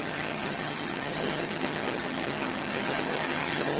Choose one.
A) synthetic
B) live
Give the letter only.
A